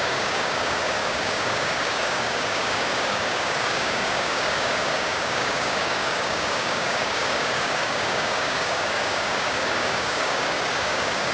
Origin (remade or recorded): remade